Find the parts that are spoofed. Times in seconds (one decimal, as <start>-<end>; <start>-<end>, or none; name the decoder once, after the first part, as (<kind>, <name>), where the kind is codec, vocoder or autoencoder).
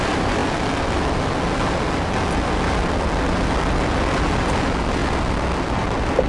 0.0-0.4 (vocoder, BigVGAN v2); 4.2-6.3